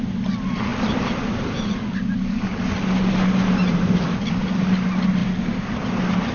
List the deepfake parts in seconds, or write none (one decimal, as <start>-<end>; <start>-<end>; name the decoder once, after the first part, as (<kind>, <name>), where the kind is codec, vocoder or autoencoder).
none